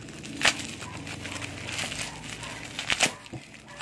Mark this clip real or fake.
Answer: real